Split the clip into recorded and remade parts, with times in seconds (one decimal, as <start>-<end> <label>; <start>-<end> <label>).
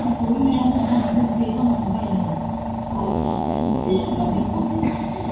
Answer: 0.0-3.1 recorded; 3.1-3.9 remade; 3.9-5.3 recorded